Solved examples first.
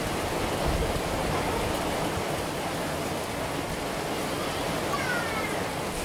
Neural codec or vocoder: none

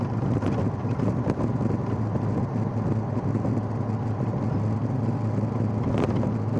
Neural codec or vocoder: none